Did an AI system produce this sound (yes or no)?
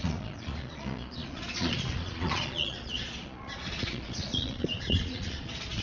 yes